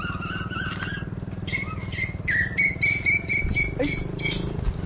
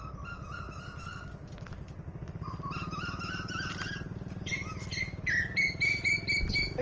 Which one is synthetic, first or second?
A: first